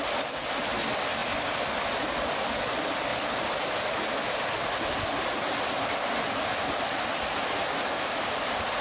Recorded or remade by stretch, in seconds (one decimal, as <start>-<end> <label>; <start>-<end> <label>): 0.0-3.1 recorded; 3.1-8.2 remade; 8.2-8.8 recorded